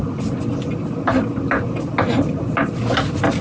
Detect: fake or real real